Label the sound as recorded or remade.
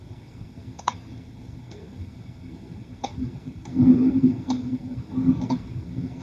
remade